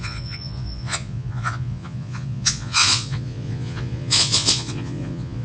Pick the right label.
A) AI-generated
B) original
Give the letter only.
A